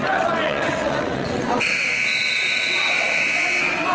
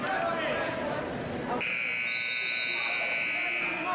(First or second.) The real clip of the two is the second